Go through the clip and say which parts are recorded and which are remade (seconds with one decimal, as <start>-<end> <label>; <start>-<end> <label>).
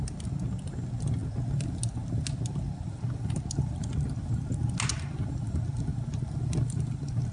0.0-7.3 recorded